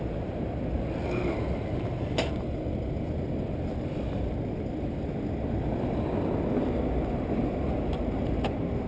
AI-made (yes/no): no